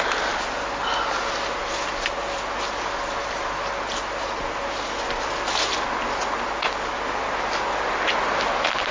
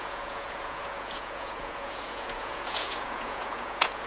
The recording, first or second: first